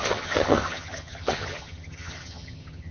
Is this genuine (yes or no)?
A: no